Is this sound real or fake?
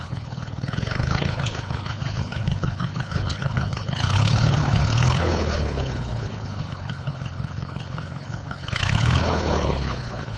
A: fake